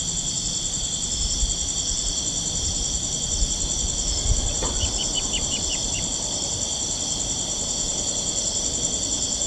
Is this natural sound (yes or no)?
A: no